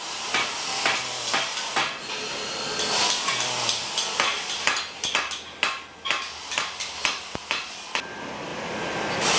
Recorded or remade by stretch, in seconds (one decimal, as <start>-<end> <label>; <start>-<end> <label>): 0.0-9.4 recorded